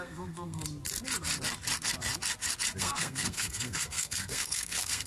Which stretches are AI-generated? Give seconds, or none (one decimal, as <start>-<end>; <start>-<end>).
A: 0.0-0.6; 2.8-5.1